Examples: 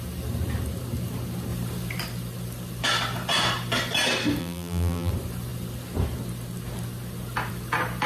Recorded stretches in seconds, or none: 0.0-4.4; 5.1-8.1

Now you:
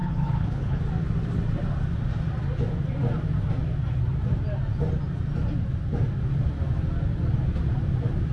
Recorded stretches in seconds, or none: 0.8-8.3

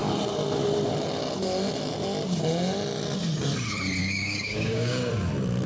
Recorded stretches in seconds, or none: 0.0-4.0; 5.1-5.7

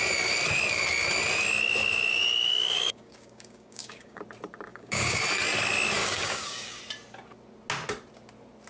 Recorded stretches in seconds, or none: 0.0-2.5; 4.2-4.7; 5.2-6.0; 6.8-8.7

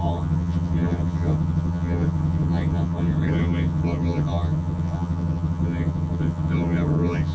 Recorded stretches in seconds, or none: none